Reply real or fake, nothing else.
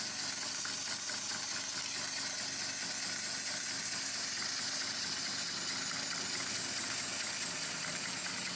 real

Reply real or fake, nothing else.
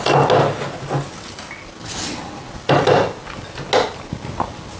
real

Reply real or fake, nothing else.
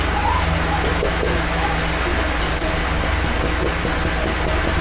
real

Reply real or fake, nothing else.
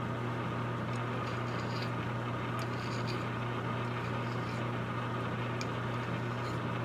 real